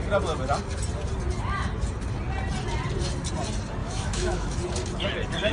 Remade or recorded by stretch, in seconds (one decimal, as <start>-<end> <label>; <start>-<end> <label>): 0.0-3.8 recorded; 3.8-4.6 remade; 4.6-5.5 recorded